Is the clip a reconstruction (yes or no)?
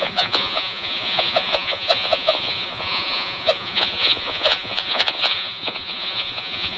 yes